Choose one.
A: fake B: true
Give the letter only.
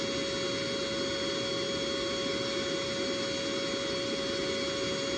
B